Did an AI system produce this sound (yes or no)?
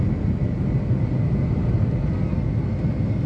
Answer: no